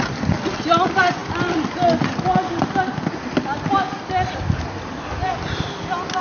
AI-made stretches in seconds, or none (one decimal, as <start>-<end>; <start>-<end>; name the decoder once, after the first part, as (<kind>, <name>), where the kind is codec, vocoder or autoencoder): none